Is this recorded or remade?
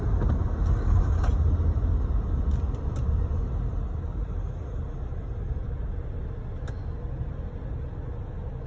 recorded